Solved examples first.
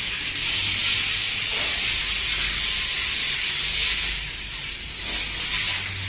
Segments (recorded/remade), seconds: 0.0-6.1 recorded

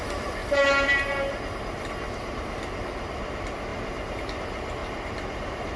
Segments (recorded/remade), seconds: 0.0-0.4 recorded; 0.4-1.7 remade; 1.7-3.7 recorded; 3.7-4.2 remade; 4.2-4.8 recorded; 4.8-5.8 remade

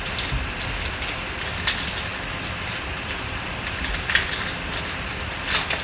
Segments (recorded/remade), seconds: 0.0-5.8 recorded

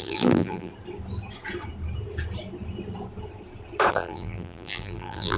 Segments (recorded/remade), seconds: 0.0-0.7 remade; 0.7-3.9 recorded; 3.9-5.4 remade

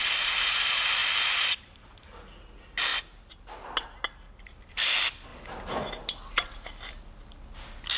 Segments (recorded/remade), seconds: 0.0-8.0 recorded

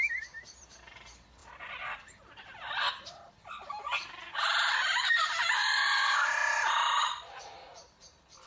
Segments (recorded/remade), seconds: 0.0-6.4 remade; 6.4-7.0 recorded; 7.0-8.5 remade